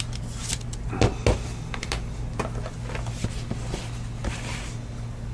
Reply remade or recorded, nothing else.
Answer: recorded